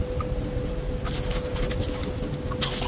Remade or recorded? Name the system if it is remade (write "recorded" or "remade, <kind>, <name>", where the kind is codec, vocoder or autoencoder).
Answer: recorded